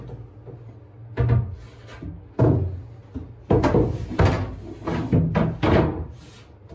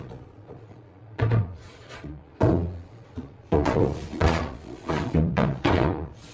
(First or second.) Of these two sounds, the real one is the first